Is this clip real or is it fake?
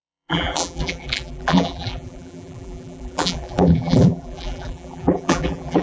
fake